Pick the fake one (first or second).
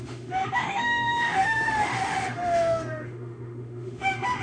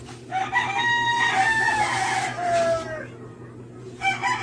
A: first